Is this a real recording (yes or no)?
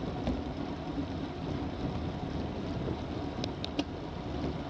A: yes